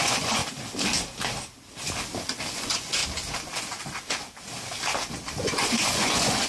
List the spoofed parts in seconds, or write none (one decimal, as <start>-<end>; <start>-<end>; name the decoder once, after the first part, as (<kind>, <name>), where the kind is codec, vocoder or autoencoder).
0.0-0.4 (vocoder, Vocos); 2.5-3.0; 5.4-6.5